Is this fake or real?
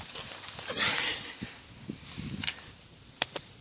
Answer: real